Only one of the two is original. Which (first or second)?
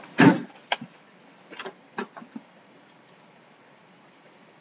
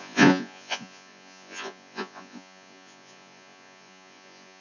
first